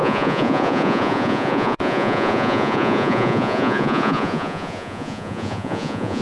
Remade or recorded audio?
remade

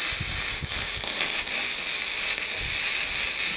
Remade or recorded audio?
recorded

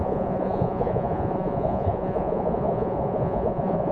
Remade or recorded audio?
remade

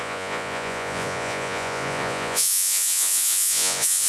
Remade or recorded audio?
remade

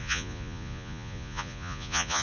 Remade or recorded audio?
remade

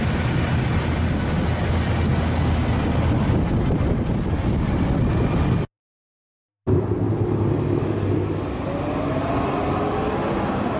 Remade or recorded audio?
recorded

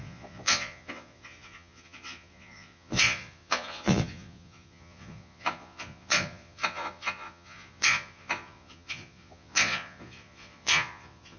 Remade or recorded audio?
remade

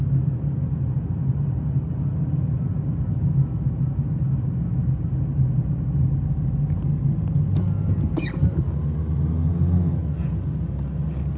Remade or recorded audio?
recorded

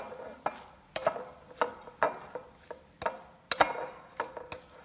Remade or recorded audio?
recorded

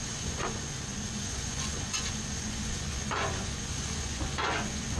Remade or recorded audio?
remade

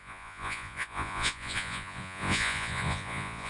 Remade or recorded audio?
remade